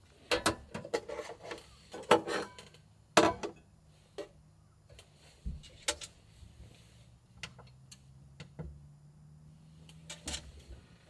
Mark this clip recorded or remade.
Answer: recorded